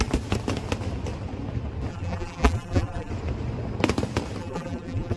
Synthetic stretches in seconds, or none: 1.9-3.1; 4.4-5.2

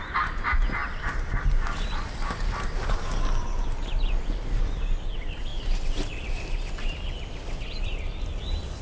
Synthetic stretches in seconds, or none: none

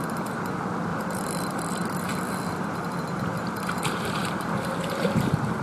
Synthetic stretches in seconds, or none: 0.9-1.4; 4.2-4.7

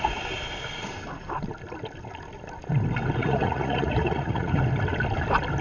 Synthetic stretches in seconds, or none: 3.2-4.6

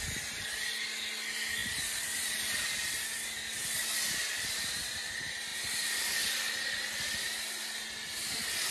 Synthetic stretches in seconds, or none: none